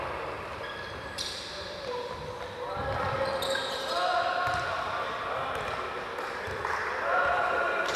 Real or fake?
real